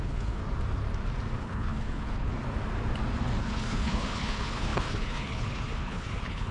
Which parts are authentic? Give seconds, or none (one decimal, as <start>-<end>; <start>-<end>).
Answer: 0.4-1.4; 2.3-3.4